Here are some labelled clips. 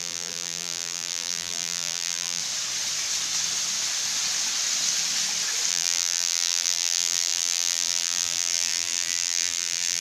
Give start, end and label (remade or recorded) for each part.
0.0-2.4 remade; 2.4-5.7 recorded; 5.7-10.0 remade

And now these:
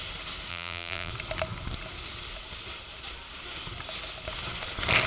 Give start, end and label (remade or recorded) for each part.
0.0-0.5 recorded; 0.5-1.1 remade; 1.1-5.1 recorded

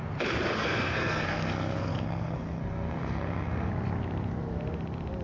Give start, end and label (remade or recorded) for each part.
0.0-0.6 recorded; 0.6-3.7 remade; 3.7-5.2 recorded

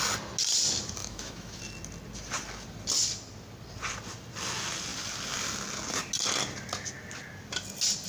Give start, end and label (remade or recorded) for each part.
0.0-1.0 recorded; 1.0-1.6 remade; 1.6-8.1 recorded

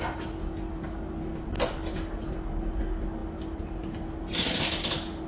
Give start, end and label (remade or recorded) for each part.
0.0-5.3 recorded

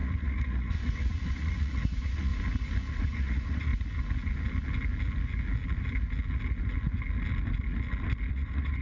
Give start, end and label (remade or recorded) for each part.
0.0-2.3 remade; 2.3-2.9 recorded; 2.9-3.7 remade; 3.7-8.3 recorded; 8.3-8.8 remade

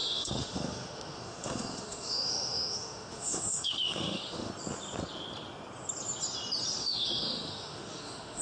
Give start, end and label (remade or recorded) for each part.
0.0-4.5 remade; 4.5-6.8 recorded; 6.8-8.4 remade

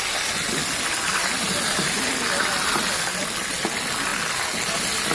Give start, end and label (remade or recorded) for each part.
0.0-5.1 recorded